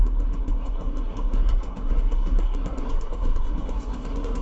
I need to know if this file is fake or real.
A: fake